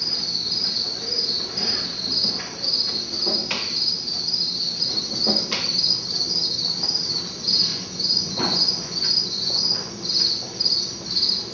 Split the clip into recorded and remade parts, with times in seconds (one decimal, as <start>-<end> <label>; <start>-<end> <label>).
0.0-7.7 recorded; 7.7-9.9 remade; 9.9-11.5 recorded